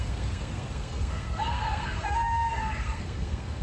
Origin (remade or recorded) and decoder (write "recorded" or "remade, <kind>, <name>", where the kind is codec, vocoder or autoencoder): remade, codec, SNAC